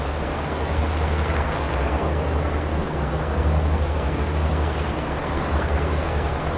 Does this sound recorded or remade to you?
remade